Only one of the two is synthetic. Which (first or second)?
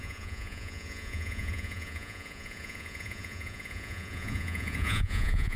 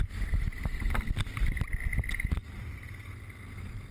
first